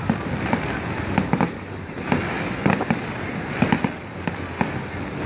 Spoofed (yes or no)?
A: no